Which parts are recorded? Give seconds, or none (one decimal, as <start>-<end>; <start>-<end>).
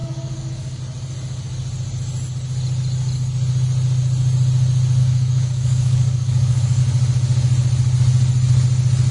0.8-5.0; 6.8-9.1